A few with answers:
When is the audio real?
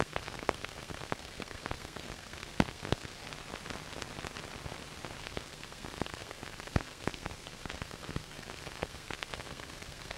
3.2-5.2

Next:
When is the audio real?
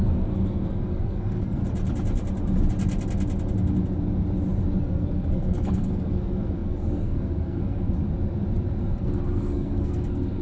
1.6-4.8; 8.0-8.8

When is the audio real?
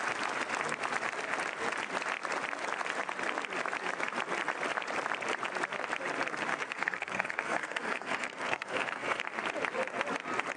0.0-6.5; 9.2-10.6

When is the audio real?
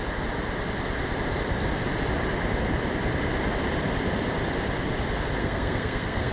0.0-5.4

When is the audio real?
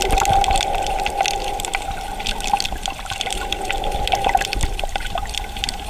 0.0-5.9